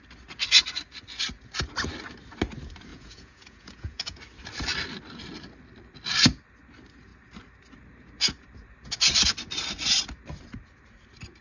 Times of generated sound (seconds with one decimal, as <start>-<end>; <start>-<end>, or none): 2.9-4.2